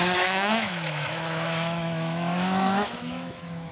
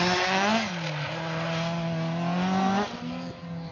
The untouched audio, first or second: second